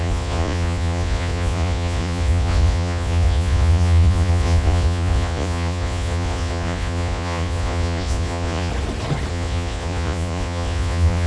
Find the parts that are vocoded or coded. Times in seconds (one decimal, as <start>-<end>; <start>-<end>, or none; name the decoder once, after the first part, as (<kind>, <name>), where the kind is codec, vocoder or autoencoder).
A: 0.0-8.7 (vocoder, Vocos); 9.3-11.3